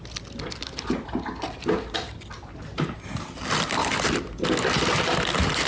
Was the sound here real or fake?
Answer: real